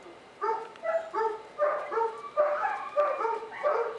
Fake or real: fake